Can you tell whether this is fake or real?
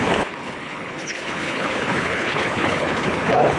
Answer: fake